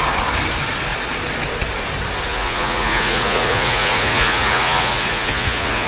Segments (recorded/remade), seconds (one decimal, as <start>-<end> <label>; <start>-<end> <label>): 0.0-2.3 recorded; 2.3-5.9 remade